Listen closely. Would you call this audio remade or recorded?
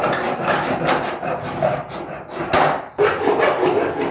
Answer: recorded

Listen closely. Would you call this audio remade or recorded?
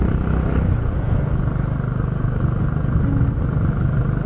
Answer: recorded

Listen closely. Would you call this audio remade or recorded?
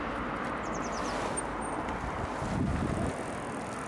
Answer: recorded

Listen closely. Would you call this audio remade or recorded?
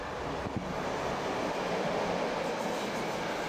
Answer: recorded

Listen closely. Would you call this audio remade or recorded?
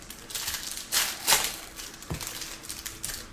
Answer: remade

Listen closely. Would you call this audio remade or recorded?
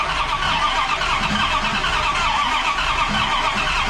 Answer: recorded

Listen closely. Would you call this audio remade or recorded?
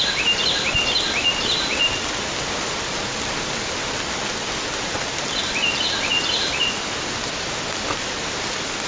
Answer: recorded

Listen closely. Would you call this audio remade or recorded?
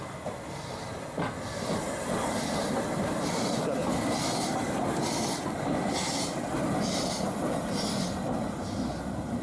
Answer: recorded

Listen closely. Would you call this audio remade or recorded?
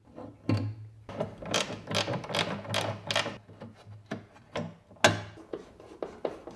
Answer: recorded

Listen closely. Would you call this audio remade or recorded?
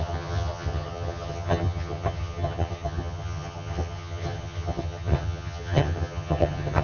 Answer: remade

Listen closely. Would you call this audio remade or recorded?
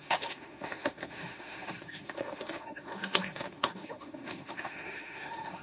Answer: remade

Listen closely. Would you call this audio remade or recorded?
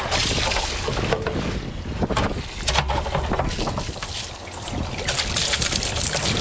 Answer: recorded